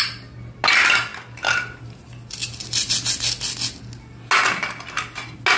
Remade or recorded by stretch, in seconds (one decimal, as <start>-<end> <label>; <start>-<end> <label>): 0.0-5.6 recorded